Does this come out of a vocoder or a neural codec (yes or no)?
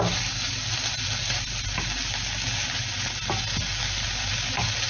no